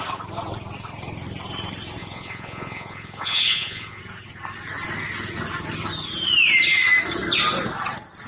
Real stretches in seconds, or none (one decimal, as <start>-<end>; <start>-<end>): 0.0-2.0; 4.0-8.3